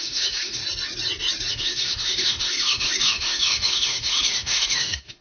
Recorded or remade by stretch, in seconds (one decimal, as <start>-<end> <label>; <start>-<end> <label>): 0.0-0.6 remade; 0.6-1.5 recorded; 1.5-5.2 remade